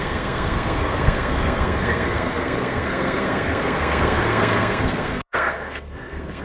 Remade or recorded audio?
remade